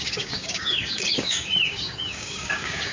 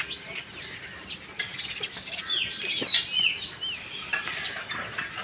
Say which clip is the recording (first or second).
second